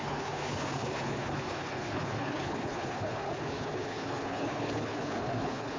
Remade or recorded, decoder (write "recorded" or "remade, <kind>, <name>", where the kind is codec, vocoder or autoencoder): remade, codec, HILCodec